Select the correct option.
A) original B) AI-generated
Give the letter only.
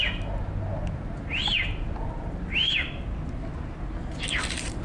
A